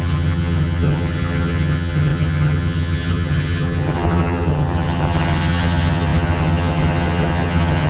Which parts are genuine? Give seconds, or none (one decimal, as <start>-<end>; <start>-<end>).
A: none